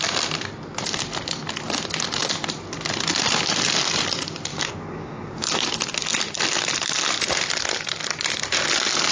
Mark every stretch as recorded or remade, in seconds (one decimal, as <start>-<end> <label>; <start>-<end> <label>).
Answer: 0.0-4.5 recorded; 4.5-5.8 remade; 5.8-9.1 recorded